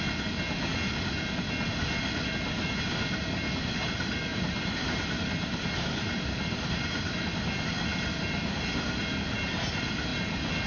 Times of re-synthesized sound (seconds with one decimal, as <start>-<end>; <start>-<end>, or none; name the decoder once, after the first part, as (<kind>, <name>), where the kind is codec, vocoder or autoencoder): 4.3-7.3 (vocoder, BigVGAN v2)